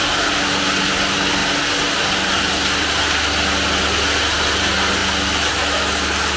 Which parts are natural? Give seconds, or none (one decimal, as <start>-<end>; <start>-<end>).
0.0-6.4